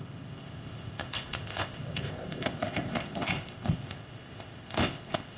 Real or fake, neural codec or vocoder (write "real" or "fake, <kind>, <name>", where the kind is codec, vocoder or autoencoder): fake, codec, ZipCodec